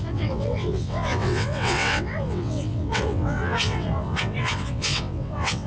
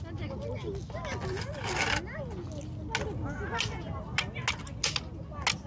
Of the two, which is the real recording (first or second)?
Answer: second